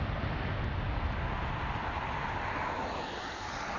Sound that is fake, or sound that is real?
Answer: real